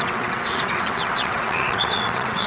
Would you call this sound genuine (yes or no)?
no